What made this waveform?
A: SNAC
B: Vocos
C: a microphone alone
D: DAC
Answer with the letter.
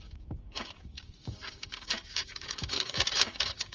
D